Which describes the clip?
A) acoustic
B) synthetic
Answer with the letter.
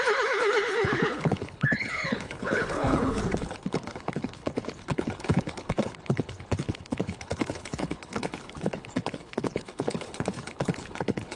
B